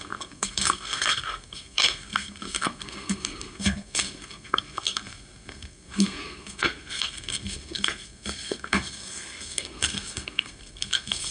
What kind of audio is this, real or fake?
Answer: fake